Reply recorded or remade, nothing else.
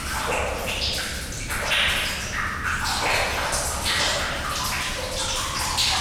recorded